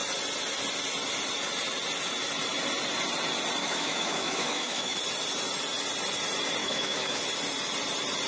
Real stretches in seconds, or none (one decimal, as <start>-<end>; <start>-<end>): 0.0-3.6; 5.0-6.6; 7.2-8.3